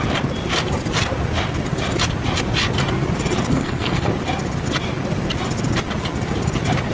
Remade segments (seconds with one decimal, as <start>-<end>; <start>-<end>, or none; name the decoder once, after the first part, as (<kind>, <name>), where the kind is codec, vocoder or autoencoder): 3.5-4.1 (codec, SNAC)